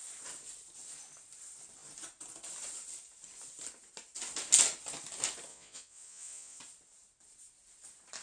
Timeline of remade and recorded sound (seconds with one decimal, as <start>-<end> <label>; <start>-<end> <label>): 0.0-5.5 recorded; 5.5-6.6 remade; 6.6-8.2 recorded

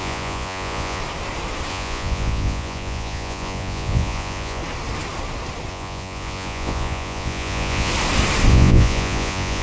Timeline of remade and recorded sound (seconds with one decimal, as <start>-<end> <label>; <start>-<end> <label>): 0.0-1.0 remade; 1.0-1.7 recorded; 1.7-4.6 remade; 4.6-5.7 recorded; 5.7-7.9 remade; 7.9-8.5 recorded; 8.5-9.6 remade

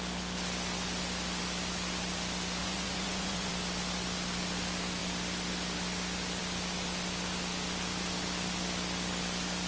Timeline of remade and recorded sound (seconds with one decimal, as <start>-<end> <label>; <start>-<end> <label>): 0.0-2.6 recorded; 2.6-3.5 remade; 3.5-9.7 recorded

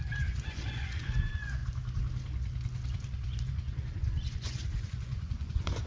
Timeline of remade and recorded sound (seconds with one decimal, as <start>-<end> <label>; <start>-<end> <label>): 0.0-1.6 remade; 1.6-3.4 recorded; 3.4-5.9 remade

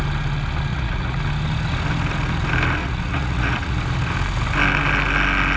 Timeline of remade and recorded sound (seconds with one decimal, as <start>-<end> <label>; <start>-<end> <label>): 0.0-0.7 recorded; 0.7-1.2 remade; 1.2-2.8 recorded; 2.8-3.8 remade; 3.8-5.6 recorded

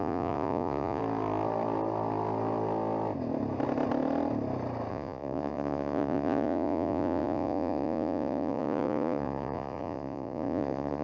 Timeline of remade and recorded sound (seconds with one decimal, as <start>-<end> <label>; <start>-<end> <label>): 0.0-1.0 remade; 1.0-4.9 recorded; 4.9-11.0 remade

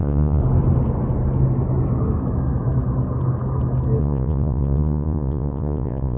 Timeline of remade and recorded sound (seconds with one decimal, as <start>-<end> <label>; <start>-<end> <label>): 0.0-0.4 remade; 0.4-4.0 recorded; 4.0-6.2 remade